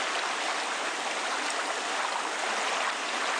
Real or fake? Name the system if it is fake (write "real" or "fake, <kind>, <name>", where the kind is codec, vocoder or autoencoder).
real